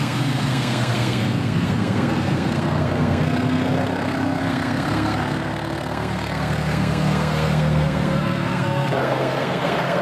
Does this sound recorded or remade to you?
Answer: remade